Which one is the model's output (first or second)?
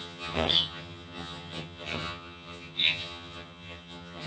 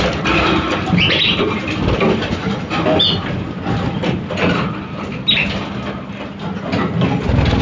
first